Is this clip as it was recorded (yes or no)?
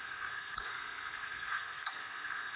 no